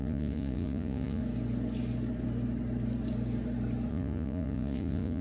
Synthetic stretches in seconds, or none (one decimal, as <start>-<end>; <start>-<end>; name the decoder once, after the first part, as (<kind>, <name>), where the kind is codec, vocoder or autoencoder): 0.0-1.2 (vocoder, Vocos); 3.9-5.2